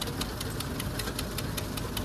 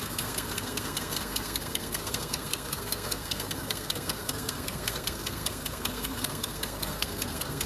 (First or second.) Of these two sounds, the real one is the first